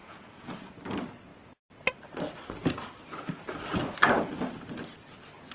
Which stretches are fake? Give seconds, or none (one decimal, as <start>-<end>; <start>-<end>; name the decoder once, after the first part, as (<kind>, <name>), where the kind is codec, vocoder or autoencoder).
0.0-0.7 (vocoder, Vocos)